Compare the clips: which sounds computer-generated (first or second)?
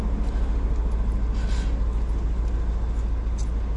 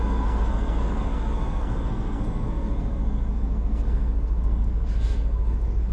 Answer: second